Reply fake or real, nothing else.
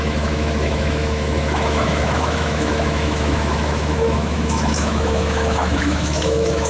fake